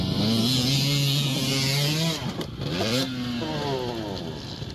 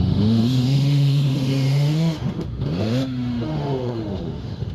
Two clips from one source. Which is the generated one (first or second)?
second